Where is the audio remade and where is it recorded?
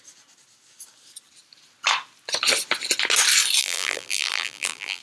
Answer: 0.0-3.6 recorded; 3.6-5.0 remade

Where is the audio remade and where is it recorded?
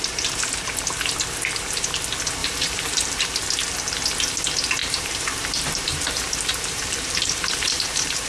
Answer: 0.0-2.4 recorded; 2.4-3.2 remade; 3.2-4.8 recorded; 4.8-8.3 remade